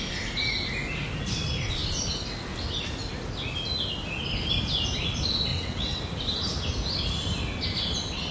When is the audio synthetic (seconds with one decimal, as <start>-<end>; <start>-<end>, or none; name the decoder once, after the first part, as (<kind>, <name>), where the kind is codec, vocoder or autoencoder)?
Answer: 5.5-6.0 (vocoder, WaveNeXt)